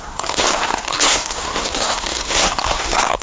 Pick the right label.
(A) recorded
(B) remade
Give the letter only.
B